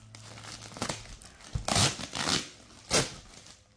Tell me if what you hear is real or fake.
real